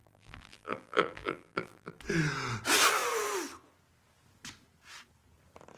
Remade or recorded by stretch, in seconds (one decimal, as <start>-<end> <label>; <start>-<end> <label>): 0.0-2.0 remade; 2.0-5.8 recorded